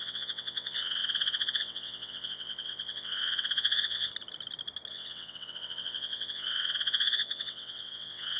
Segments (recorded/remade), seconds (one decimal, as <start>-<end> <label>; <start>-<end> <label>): 0.0-4.1 remade; 4.1-4.9 recorded; 4.9-8.4 remade